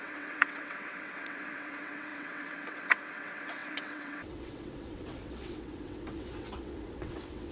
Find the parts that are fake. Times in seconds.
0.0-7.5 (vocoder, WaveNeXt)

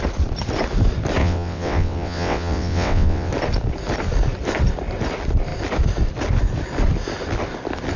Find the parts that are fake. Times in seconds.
1.2-3.3 (vocoder, WaveNeXt)